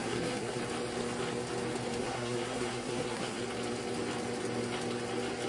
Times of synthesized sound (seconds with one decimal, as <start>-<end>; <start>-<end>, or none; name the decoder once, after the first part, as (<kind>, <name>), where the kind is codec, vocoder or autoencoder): 0.0-0.6 (codec, SNAC); 2.0-3.4